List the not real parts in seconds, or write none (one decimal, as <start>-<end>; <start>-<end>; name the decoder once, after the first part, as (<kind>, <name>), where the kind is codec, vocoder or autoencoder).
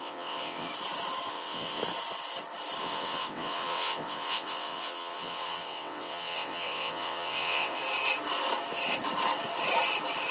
0.0-0.7 (vocoder, WaveNeXt); 1.3-1.8; 2.8-7.8